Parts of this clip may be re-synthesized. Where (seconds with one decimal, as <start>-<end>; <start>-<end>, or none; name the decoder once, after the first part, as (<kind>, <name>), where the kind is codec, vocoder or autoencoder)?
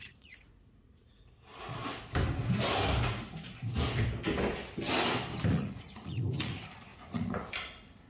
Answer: 0.0-1.1 (vocoder, Vocos); 5.5-6.5; 6.9-7.5